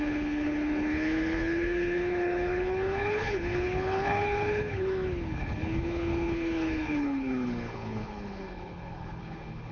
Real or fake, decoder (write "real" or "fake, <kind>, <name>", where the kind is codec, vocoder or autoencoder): fake, codec, HILCodec